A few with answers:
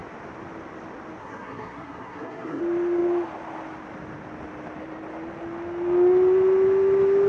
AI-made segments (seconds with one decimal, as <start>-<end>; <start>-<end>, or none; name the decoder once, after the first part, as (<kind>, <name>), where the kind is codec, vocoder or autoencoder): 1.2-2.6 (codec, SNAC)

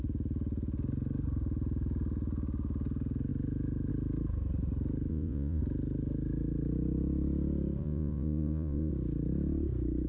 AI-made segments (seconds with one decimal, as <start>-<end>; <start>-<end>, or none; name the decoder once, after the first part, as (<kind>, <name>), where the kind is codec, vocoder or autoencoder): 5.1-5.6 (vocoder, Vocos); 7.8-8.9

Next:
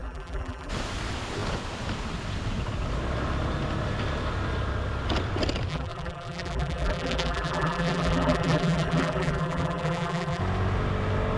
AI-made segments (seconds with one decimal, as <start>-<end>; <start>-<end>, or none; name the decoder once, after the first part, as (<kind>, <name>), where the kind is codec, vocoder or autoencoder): 0.0-0.7 (vocoder, BigVGAN v2); 5.7-10.4